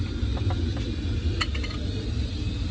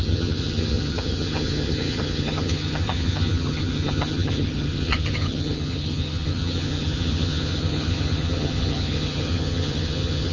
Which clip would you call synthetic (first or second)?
second